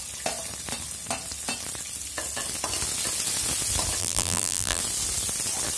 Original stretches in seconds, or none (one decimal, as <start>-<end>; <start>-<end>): 0.0-4.0; 4.8-5.8